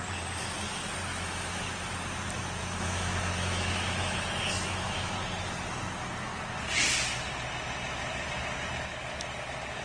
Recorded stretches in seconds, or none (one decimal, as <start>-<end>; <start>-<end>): 0.0-1.1; 1.6-2.6; 5.1-9.8